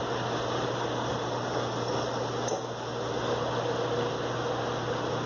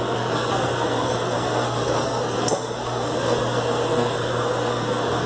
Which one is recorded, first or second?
first